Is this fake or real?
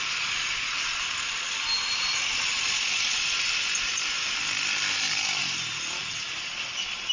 real